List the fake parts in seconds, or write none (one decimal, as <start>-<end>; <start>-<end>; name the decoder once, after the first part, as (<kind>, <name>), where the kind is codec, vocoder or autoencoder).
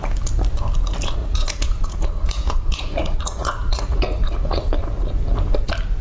1.2-4.8 (vocoder, Vocos)